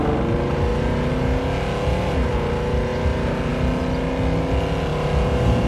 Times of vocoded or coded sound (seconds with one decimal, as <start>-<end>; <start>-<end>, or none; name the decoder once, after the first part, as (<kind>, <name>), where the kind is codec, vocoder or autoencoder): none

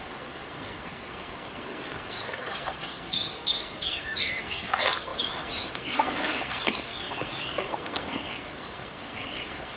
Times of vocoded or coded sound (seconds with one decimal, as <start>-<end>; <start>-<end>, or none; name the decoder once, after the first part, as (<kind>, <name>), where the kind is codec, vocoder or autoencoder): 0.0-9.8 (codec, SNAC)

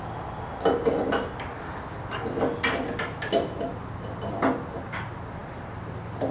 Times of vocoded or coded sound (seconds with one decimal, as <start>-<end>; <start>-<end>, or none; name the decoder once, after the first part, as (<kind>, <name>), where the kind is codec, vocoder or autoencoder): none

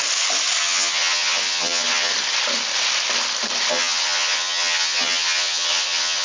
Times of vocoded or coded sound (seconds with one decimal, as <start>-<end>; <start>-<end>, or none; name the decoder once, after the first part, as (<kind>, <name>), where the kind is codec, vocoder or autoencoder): 0.6-2.1 (vocoder, HiFi-GAN); 3.7-6.2

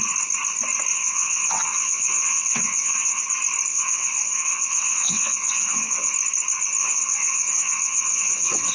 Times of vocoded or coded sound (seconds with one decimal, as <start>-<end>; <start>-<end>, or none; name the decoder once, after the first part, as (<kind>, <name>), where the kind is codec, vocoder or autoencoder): 0.9-3.2 (vocoder, WaveNeXt); 3.7-6.1; 6.8-8.7

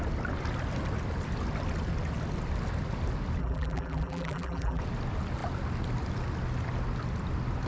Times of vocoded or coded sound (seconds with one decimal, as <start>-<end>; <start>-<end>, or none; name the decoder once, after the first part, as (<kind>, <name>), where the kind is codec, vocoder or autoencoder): 3.4-4.8 (vocoder, BigVGAN v2)